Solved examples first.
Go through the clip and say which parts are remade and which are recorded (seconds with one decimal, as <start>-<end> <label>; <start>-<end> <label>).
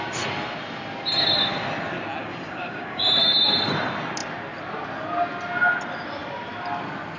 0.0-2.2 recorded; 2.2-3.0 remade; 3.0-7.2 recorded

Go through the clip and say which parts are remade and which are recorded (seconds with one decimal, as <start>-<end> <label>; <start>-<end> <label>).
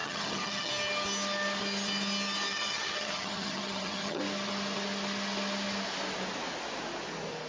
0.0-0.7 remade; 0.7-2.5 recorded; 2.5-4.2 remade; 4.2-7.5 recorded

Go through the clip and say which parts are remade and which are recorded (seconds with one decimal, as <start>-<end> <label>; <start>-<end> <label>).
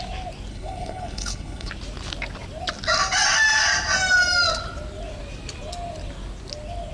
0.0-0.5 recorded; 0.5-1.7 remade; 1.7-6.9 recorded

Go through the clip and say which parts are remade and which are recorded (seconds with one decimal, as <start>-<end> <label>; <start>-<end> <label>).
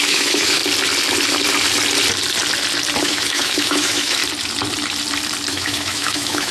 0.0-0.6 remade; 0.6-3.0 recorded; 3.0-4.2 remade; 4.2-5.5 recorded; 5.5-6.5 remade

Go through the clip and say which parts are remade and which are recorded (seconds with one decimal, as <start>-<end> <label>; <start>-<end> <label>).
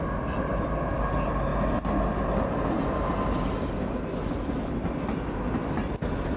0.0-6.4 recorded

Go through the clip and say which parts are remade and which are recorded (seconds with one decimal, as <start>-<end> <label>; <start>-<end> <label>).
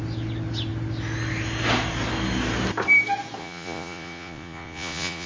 0.0-3.4 recorded; 3.4-5.3 remade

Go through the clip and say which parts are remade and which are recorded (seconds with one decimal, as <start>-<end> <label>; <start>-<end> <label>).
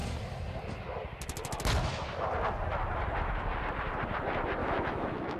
0.0-4.6 recorded; 4.6-5.4 remade